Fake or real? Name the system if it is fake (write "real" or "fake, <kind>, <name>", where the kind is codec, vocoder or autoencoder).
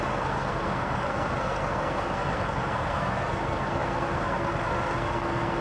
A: fake, codec, SNAC